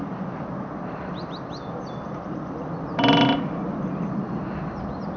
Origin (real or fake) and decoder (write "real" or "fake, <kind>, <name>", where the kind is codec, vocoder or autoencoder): real